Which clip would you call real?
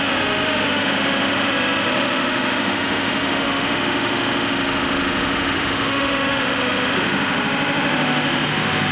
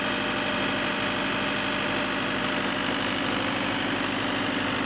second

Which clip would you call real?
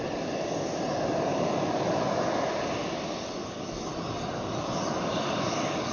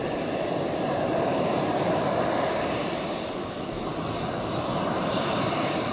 first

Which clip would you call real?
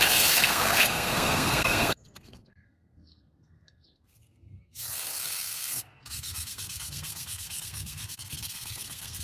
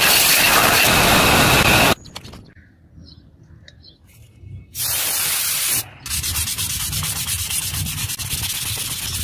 second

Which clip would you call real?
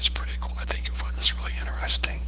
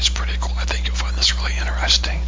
second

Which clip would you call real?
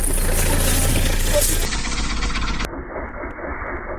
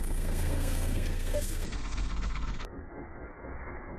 first